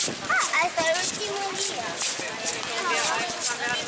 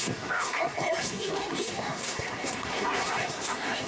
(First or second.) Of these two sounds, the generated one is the second